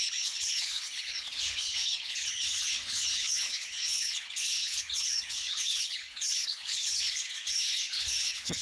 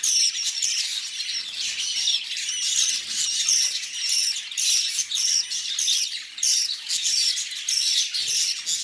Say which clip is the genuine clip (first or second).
second